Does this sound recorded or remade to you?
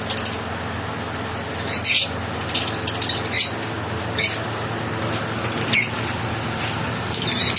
recorded